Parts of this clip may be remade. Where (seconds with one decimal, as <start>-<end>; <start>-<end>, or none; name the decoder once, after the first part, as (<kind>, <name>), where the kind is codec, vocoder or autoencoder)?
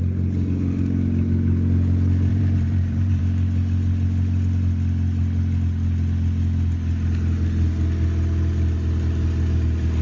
2.3-3.2 (vocoder, BigVGAN v2)